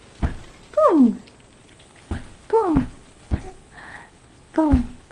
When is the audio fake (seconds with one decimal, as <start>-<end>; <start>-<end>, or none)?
1.6-5.1